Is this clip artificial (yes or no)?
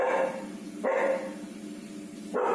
no